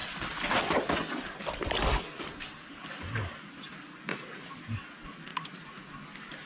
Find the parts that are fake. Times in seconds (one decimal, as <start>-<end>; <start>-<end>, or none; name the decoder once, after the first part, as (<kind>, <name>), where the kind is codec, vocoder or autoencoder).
4.1-4.6 (vocoder, Vocos); 5.3-5.9